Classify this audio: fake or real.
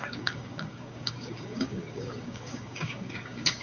fake